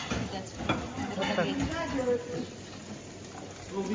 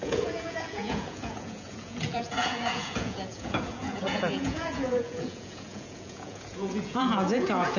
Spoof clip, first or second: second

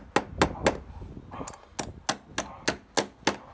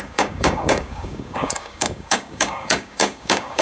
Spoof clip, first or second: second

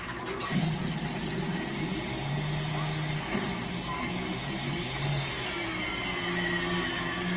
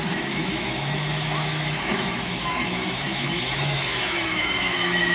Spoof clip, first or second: second